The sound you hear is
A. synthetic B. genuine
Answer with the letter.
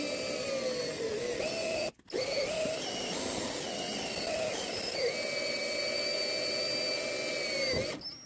B